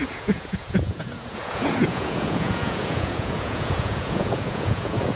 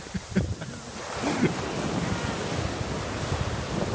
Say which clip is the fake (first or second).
first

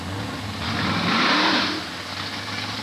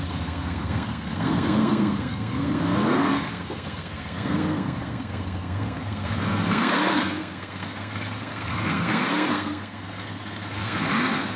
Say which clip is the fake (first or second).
second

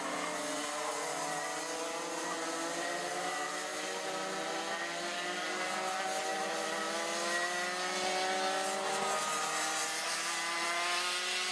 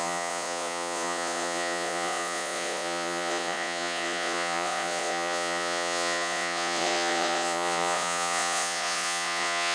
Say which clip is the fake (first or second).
second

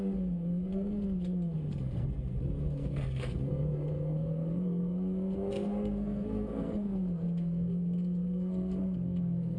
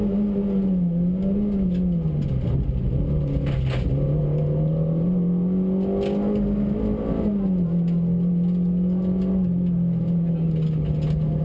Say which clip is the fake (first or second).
first